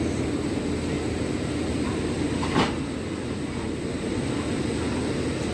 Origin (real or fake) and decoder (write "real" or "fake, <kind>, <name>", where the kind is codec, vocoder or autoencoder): real